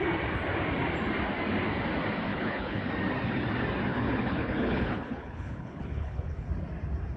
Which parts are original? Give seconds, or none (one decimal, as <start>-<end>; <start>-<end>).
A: 0.0-2.3; 2.9-3.9; 6.5-7.2